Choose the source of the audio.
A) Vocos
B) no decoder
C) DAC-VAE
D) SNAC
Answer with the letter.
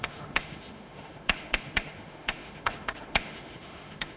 C